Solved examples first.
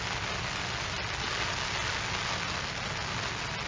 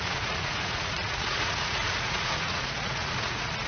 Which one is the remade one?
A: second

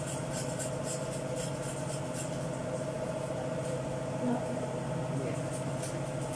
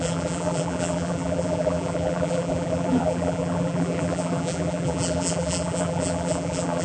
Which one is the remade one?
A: second